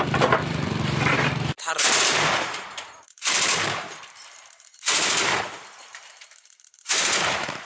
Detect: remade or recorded remade